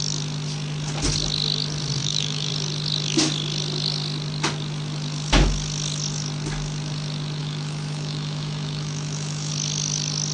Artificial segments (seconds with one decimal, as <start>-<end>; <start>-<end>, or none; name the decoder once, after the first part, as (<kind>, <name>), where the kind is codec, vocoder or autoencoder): 2.0-2.5 (autoencoder, DAC-VAE); 7.4-9.5